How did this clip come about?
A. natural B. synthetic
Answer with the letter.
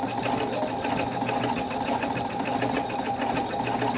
A